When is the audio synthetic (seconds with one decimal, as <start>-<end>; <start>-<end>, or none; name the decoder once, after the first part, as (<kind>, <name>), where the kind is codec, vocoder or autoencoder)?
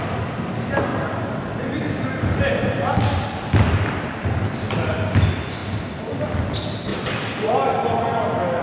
none